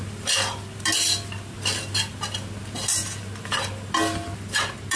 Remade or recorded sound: recorded